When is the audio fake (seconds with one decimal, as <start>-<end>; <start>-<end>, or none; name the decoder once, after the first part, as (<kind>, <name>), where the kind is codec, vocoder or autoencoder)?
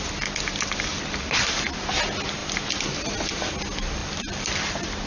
4.0-5.1 (vocoder, BigVGAN v2)